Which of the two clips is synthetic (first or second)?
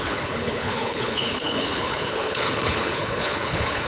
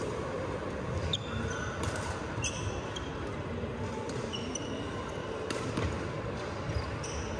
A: first